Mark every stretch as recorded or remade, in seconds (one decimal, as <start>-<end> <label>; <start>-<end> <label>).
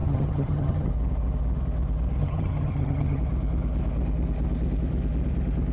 0.0-0.9 remade; 0.9-2.2 recorded; 2.2-3.2 remade; 3.2-5.7 recorded